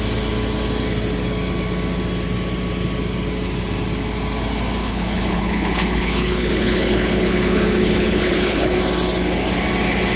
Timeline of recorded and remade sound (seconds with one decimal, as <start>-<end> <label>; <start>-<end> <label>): 0.0-4.8 recorded; 4.8-8.8 remade; 8.8-10.2 recorded